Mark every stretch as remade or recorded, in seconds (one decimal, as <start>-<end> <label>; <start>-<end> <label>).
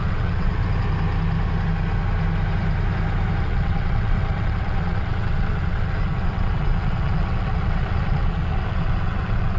0.0-0.6 remade; 0.6-3.4 recorded; 3.4-9.6 remade